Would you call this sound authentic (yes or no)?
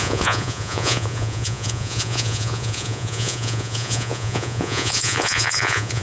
no